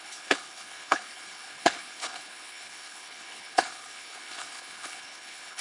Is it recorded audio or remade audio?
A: remade